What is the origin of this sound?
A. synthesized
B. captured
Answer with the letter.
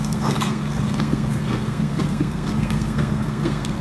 A